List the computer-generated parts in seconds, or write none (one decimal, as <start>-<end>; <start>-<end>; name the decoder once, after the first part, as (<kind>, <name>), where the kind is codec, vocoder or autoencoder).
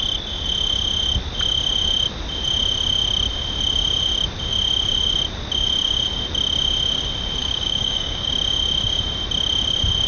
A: 7.4-8.3 (codec, DAC)